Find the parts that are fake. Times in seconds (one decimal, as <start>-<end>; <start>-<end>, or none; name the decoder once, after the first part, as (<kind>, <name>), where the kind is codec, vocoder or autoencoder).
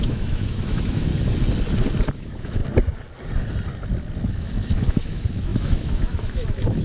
0.0-1.1 (autoencoder, DAC-VAE); 2.1-2.6; 4.3-6.8